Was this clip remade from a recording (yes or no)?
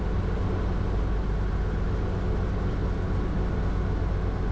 no